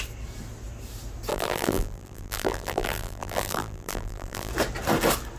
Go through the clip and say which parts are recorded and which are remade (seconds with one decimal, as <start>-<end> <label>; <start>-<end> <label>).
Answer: 0.0-1.3 recorded; 1.3-4.5 remade; 4.5-5.4 recorded